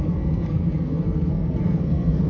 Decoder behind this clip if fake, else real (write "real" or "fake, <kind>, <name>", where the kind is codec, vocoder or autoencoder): fake, codec, SNAC